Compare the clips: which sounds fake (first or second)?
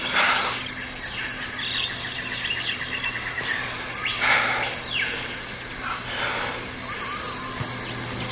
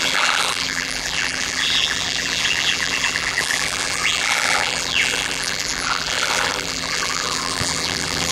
second